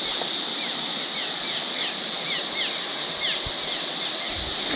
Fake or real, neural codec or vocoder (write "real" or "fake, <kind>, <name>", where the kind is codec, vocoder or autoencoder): real